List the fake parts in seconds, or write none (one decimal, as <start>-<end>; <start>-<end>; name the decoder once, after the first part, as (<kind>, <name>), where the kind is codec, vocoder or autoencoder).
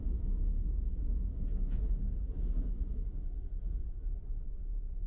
0.0-3.1 (vocoder, Vocos)